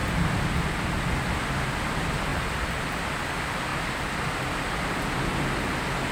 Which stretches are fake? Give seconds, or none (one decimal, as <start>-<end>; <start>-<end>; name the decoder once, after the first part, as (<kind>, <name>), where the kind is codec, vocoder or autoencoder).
none